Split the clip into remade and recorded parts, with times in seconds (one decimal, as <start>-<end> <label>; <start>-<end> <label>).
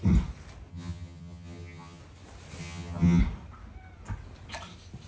0.0-0.7 recorded; 0.7-2.0 remade; 2.0-2.6 recorded; 2.6-3.2 remade; 3.2-5.1 recorded